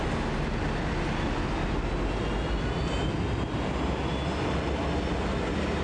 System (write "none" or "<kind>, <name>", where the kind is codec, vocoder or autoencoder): none